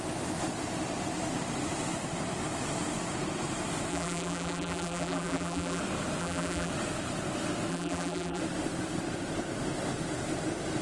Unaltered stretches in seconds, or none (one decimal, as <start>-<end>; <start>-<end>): 0.0-3.9; 5.8-6.2; 6.7-7.7; 8.4-10.8